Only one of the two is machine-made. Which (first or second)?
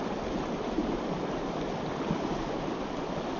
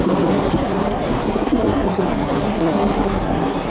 second